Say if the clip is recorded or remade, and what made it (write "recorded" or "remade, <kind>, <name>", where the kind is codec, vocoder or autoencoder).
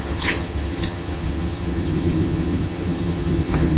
remade, vocoder, HiFi-GAN